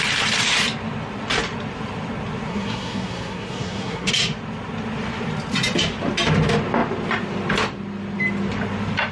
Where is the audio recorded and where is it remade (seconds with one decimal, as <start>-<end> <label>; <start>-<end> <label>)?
0.0-2.5 recorded; 2.5-4.1 remade; 4.1-9.1 recorded